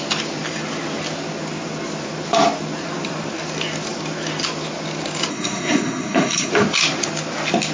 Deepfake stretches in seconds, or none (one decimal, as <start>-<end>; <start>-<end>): 5.3-6.5